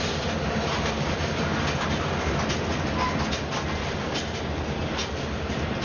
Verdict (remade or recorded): recorded